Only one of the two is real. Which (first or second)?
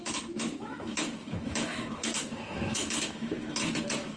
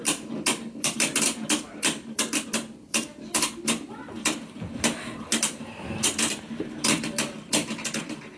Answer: second